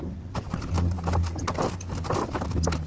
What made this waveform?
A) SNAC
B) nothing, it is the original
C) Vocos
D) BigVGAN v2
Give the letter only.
B